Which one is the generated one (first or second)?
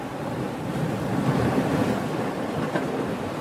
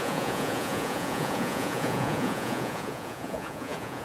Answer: second